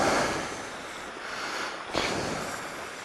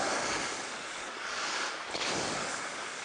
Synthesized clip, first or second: second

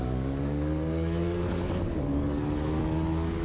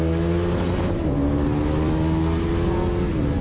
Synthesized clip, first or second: first